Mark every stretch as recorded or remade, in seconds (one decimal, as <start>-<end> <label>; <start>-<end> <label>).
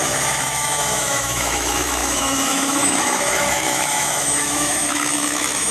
0.0-5.7 remade